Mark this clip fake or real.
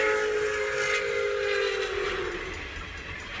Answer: real